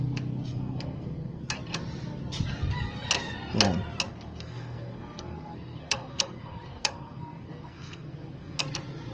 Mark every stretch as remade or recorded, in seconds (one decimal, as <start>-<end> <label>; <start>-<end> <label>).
0.0-0.5 recorded; 0.5-1.4 remade; 1.4-4.1 recorded; 4.1-8.6 remade; 8.6-9.1 recorded